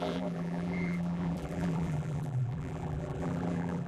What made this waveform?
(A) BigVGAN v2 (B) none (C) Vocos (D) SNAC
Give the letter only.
A